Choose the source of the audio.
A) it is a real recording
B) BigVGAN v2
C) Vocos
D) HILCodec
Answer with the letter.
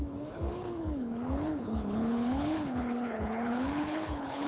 D